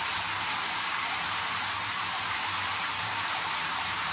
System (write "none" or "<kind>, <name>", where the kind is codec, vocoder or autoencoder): vocoder, BigVGAN v2